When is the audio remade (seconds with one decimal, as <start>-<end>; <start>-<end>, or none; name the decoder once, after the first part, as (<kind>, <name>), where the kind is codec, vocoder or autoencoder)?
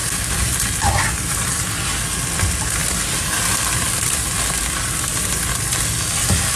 none